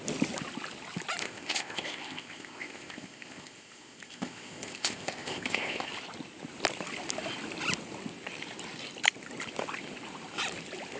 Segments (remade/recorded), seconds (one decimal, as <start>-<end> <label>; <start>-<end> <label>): 0.0-1.2 recorded; 1.2-5.9 remade; 5.9-11.0 recorded